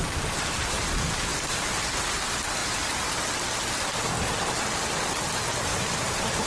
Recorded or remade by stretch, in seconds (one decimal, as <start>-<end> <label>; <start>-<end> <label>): 0.0-1.3 recorded; 1.3-2.2 remade; 2.2-2.6 recorded; 2.6-3.1 remade; 3.1-5.7 recorded; 5.7-6.5 remade